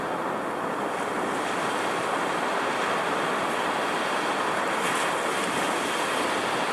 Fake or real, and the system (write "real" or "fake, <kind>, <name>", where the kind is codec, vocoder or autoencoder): real